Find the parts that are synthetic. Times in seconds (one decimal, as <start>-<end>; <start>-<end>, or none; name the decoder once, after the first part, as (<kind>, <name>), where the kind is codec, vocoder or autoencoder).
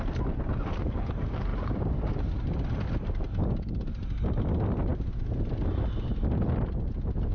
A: 1.5-2.1 (vocoder, BigVGAN v2); 4.9-5.6